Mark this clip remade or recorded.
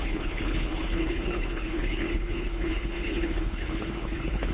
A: remade